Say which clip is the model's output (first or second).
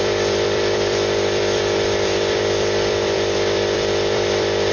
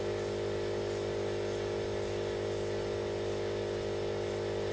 first